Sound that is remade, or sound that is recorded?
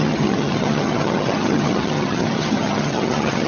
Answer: remade